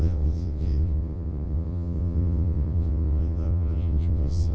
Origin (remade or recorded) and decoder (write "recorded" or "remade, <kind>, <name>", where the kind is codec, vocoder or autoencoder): remade, vocoder, WaveNeXt